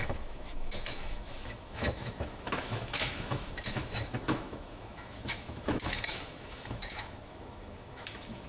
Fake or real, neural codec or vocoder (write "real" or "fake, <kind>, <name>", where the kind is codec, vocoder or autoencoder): fake, autoencoder, DAC-VAE